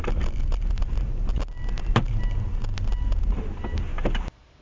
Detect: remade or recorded recorded